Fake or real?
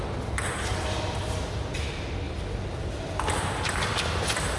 real